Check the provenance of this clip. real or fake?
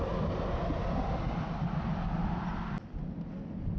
real